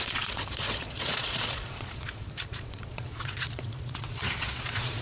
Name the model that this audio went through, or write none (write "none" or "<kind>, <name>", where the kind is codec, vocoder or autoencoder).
vocoder, Vocos